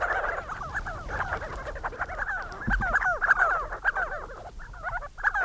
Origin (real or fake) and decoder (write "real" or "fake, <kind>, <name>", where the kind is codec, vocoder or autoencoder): real